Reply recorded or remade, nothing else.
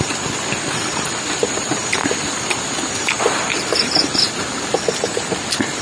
recorded